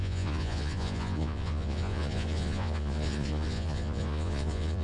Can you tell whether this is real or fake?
fake